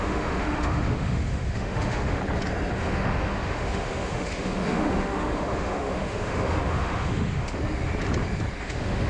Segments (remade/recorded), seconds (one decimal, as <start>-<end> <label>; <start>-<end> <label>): 0.0-2.2 remade; 2.2-2.7 recorded; 2.7-7.6 remade; 7.6-8.6 recorded; 8.6-9.1 remade